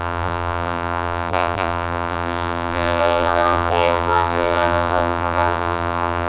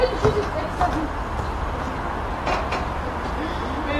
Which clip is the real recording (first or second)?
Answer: second